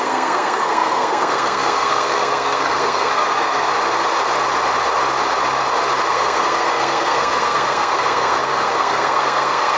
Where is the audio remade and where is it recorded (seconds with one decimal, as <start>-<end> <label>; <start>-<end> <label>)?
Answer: 0.0-3.7 remade; 3.7-6.1 recorded; 6.1-9.8 remade